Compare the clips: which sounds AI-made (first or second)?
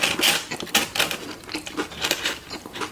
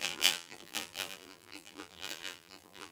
second